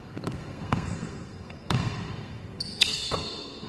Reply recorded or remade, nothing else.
remade